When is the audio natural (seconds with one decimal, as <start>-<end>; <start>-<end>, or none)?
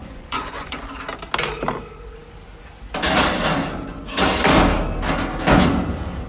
0.9-6.3